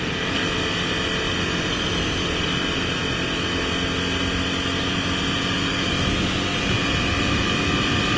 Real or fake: real